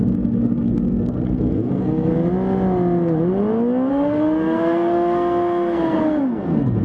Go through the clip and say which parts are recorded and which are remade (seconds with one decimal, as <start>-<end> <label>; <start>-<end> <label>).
0.0-2.1 remade; 2.1-3.9 recorded; 3.9-6.8 remade